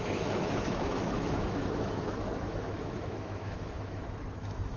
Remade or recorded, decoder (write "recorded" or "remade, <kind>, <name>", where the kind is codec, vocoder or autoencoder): remade, autoencoder, DAC-VAE